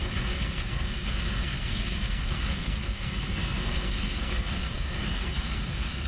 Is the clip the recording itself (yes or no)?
no